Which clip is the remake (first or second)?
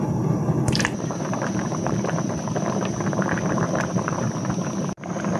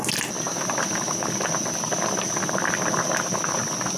first